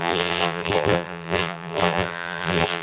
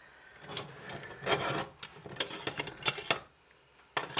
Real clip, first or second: second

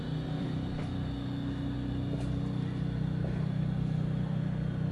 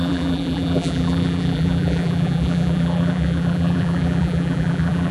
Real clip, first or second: first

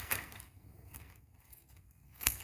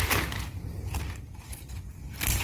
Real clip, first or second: second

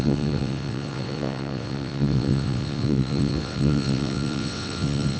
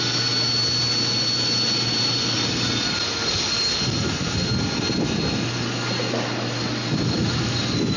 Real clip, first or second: second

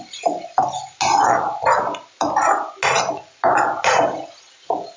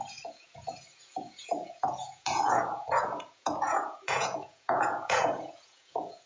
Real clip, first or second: first